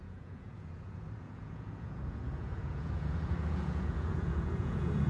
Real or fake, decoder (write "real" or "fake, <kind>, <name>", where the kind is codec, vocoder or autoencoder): fake, vocoder, Vocos